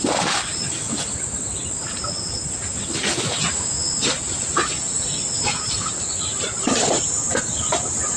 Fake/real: real